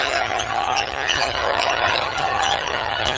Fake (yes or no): yes